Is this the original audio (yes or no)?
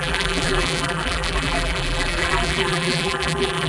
no